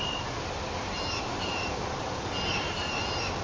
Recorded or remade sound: remade